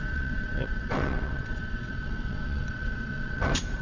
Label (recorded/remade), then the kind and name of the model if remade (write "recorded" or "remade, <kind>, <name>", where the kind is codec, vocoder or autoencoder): remade, vocoder, WaveNeXt